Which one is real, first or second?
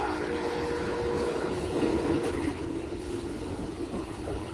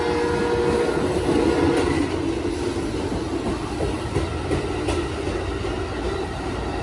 second